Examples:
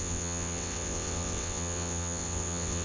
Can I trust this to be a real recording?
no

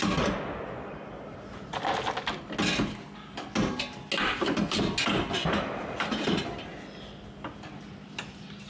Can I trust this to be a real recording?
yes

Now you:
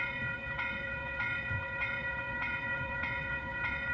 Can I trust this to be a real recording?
no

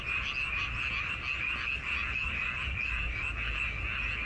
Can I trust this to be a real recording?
yes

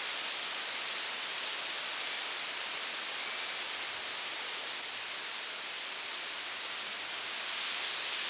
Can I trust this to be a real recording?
yes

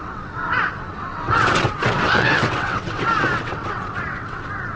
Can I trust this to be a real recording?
no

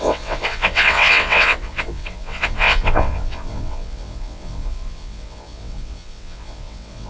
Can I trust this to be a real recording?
no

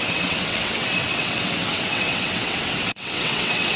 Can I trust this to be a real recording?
no